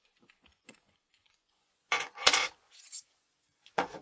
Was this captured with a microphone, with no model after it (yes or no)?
no